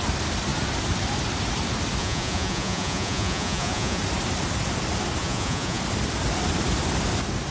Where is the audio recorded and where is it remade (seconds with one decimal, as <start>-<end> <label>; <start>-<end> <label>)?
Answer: 0.0-2.0 recorded; 2.0-4.0 remade; 4.0-5.2 recorded; 5.2-5.8 remade; 5.8-7.5 recorded